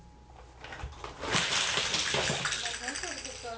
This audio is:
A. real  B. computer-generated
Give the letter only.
A